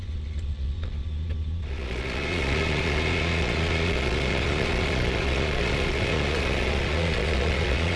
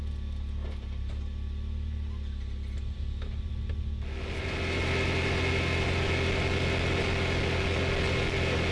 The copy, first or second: first